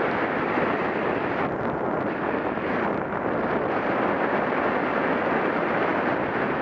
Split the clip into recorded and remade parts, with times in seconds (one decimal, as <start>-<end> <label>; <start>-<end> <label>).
0.0-1.2 remade; 1.2-2.3 recorded; 2.3-6.6 remade